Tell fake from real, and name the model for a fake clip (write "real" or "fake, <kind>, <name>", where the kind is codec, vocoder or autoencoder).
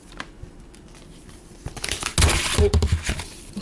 real